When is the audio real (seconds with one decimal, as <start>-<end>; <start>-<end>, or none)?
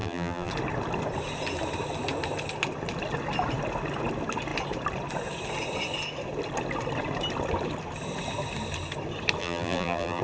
0.5-9.4